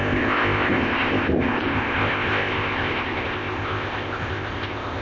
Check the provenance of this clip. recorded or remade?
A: remade